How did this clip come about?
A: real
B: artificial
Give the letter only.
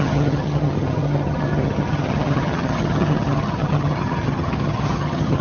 B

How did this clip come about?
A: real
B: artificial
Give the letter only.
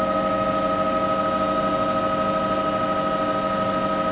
A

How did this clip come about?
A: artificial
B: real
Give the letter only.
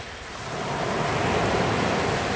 B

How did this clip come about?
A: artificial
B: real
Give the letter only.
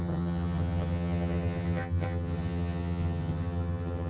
A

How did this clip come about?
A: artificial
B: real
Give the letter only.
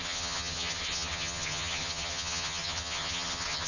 A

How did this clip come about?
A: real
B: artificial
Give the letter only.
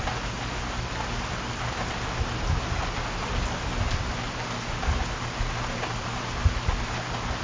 A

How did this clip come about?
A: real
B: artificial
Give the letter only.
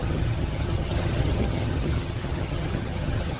B